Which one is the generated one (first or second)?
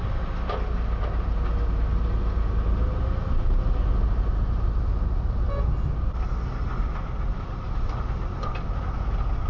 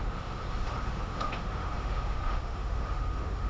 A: second